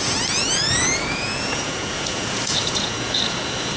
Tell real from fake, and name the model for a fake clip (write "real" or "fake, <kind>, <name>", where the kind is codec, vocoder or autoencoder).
fake, vocoder, Vocos